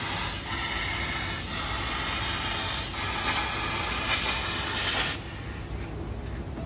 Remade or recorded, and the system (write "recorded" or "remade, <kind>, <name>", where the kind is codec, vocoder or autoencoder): recorded